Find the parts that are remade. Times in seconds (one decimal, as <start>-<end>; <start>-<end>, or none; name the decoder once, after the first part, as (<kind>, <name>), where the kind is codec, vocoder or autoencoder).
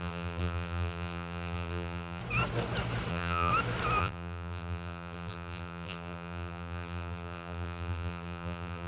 0.0-2.2 (vocoder, BigVGAN v2); 3.1-3.5; 4.0-8.9